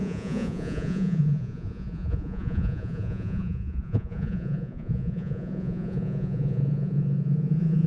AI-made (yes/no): yes